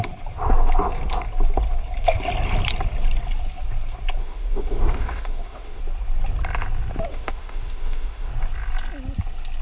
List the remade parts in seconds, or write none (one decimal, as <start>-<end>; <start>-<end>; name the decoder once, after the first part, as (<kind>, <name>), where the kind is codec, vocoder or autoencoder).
4.2-5.8 (autoencoder, DAC-VAE); 7.1-8.3